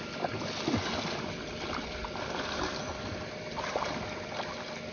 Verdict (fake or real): real